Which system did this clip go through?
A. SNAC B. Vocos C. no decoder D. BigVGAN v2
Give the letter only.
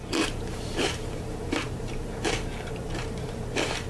D